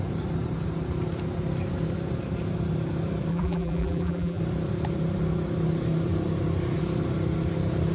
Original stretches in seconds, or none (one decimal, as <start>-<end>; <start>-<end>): 0.0-3.3; 4.4-7.9